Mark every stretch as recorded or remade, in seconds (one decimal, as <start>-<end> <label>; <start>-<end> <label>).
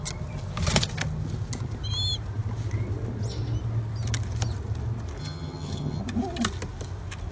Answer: 0.0-5.2 recorded; 5.2-6.0 remade; 6.0-7.3 recorded